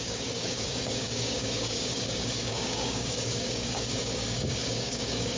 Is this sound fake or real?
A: fake